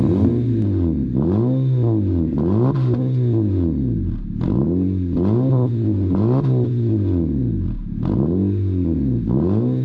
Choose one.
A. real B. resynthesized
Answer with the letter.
A